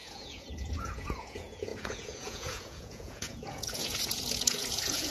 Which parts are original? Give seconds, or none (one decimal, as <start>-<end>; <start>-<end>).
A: none